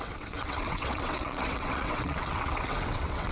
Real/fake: fake